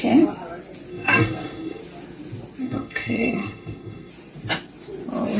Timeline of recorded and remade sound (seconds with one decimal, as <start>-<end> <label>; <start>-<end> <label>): 0.0-0.9 recorded; 0.9-1.8 remade; 1.8-2.6 recorded; 2.6-4.1 remade; 4.1-5.4 recorded